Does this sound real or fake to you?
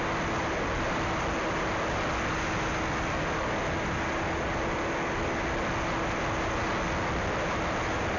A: real